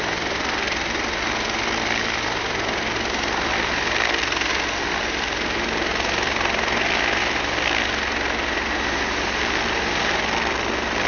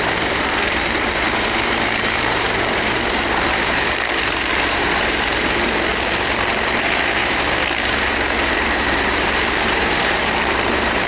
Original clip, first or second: first